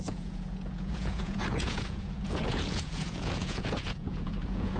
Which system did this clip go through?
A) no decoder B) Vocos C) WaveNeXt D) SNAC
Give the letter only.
B